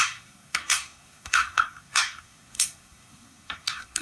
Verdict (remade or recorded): remade